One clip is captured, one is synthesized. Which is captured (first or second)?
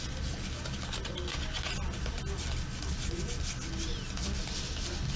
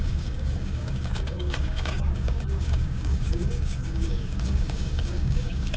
first